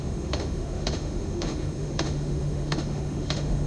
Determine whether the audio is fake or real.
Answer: fake